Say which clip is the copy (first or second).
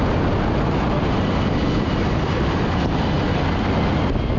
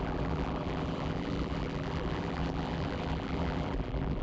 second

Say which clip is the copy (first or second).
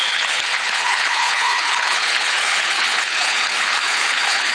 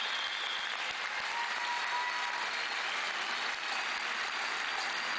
first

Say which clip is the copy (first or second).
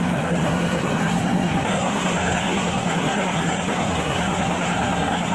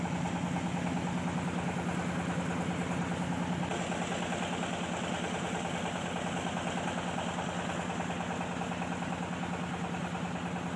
first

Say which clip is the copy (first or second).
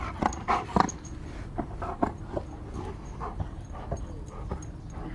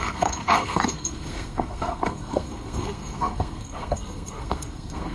second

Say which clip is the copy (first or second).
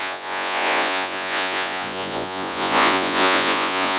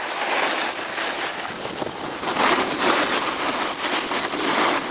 first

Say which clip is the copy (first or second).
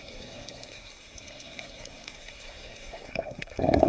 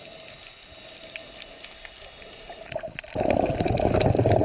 first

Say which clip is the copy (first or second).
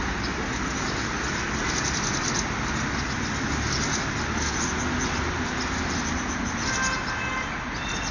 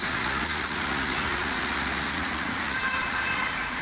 second